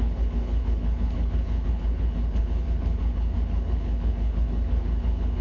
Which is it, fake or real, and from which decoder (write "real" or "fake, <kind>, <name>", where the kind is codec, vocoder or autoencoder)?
fake, codec, HILCodec